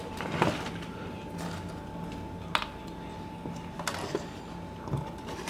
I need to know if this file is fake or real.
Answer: real